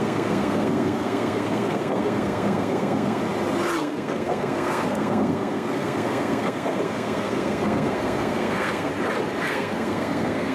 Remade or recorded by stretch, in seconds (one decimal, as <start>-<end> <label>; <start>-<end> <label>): 0.0-3.2 remade; 3.2-3.8 recorded; 3.8-8.9 remade; 8.9-9.4 recorded; 9.4-10.5 remade